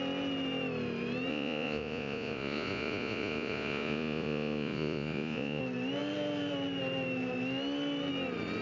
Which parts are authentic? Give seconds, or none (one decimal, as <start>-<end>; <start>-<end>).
0.0-1.3; 5.6-8.6